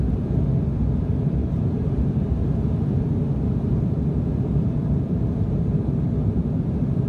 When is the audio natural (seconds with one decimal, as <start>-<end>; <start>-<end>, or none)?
0.0-1.4; 2.1-7.1